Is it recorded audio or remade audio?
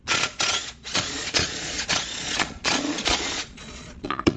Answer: remade